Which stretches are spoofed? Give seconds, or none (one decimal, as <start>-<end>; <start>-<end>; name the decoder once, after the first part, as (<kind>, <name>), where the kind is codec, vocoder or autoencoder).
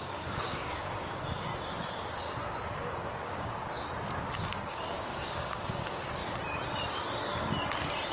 0.0-1.5 (codec, DAC); 2.7-3.6; 4.3-6.2